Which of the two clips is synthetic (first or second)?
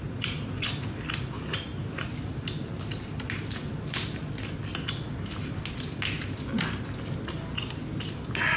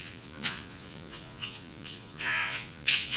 second